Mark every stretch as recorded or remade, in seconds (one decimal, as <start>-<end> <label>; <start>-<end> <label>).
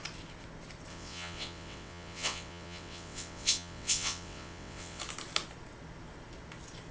0.0-0.9 recorded; 0.9-5.0 remade; 5.0-6.9 recorded